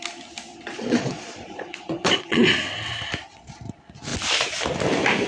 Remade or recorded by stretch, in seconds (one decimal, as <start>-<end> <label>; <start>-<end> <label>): 0.0-0.5 recorded; 0.5-2.5 remade; 2.5-5.3 recorded